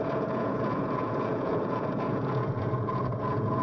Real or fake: fake